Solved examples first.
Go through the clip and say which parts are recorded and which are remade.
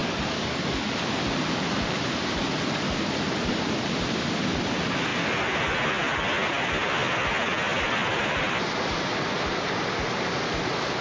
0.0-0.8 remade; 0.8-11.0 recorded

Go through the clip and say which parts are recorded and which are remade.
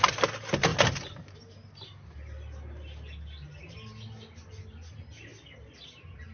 0.0-6.3 recorded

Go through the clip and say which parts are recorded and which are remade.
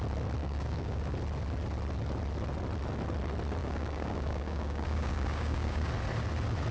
0.0-0.4 recorded; 0.4-1.0 remade; 1.0-3.6 recorded; 3.6-5.9 remade; 5.9-6.7 recorded